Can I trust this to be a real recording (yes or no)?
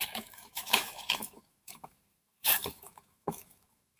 no